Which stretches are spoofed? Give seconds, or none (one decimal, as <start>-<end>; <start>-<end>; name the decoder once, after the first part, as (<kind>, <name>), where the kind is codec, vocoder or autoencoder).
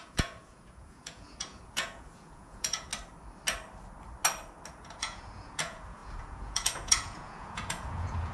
0.0-2.9 (vocoder, Vocos); 4.7-8.3